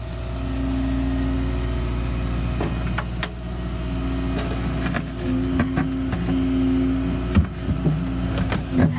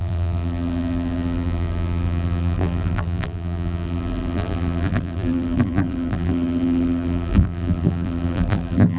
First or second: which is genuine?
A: first